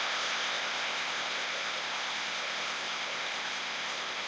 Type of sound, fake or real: fake